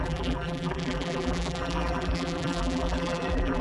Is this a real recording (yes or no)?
no